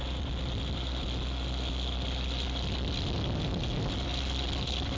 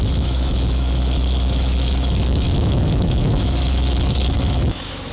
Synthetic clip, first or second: second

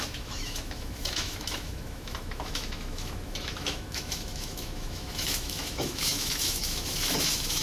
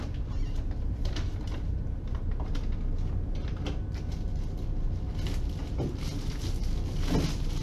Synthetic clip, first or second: first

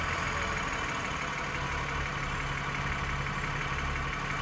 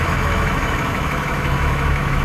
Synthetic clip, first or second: second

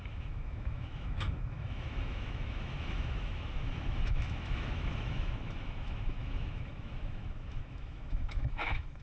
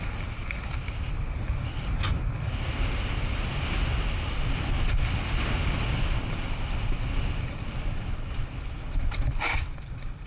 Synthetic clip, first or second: first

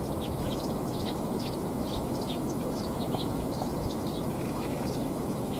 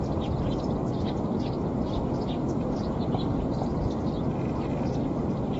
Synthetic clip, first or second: first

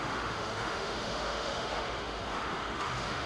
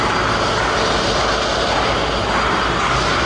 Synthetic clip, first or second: first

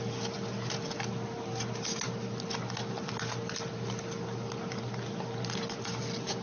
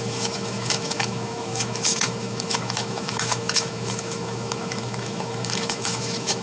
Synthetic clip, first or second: second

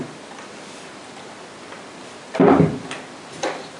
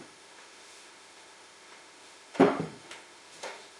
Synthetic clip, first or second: second